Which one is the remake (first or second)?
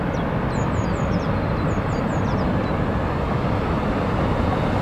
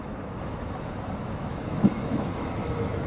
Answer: second